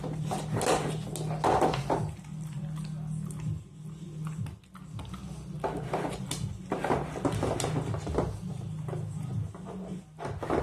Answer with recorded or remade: recorded